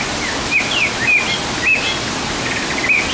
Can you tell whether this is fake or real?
real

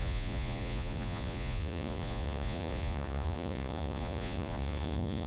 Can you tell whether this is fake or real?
fake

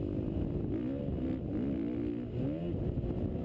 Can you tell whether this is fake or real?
real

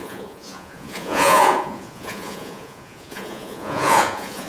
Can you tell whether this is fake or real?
fake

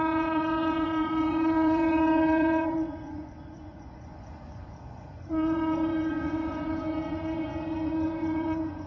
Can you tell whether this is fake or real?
fake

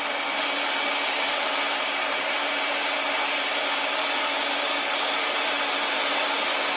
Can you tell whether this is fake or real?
real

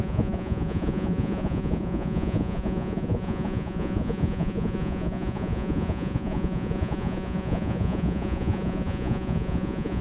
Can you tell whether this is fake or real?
fake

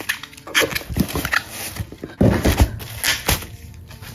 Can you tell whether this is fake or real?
real